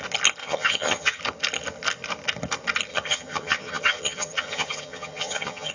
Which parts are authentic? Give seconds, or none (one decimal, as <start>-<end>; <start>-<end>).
0.0-0.4; 1.2-2.9